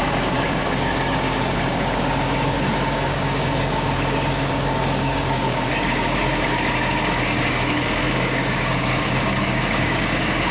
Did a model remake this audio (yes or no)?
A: yes